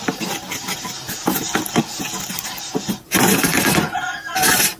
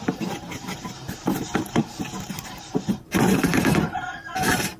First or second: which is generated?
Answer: second